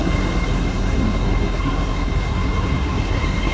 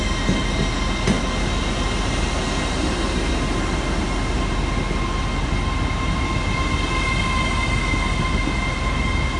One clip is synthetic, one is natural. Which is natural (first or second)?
second